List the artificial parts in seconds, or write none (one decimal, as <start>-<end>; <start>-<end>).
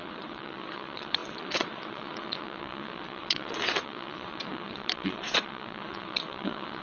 0.0-6.8